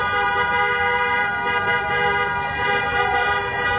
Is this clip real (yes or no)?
no